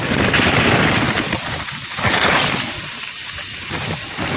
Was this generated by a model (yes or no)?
no